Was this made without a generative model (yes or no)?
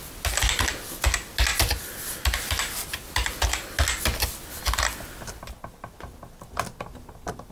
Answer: yes